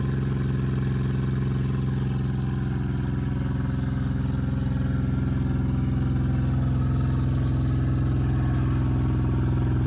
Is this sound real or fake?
real